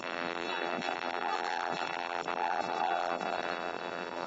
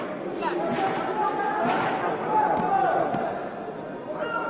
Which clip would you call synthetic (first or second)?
first